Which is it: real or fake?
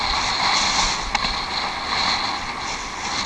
real